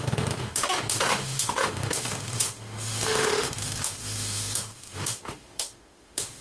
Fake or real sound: fake